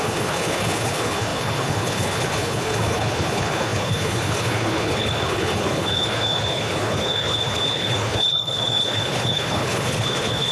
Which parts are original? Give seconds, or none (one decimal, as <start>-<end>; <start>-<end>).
none